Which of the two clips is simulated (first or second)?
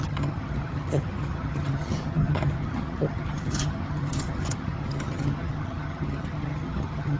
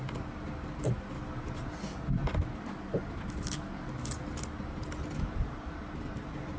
first